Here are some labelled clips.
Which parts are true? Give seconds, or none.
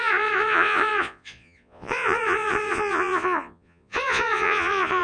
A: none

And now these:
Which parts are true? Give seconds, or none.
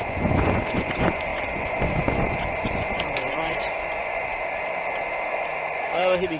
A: 4.3-5.3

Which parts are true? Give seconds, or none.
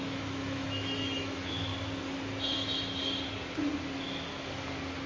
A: 1.7-5.1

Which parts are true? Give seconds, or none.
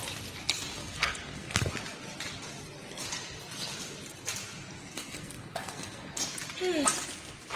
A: 0.0-0.8; 1.7-4.8; 6.2-7.6